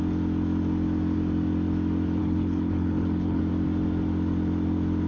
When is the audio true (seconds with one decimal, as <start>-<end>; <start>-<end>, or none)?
0.0-2.2; 3.4-5.1